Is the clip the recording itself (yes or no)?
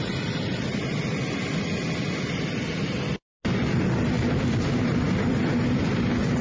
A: yes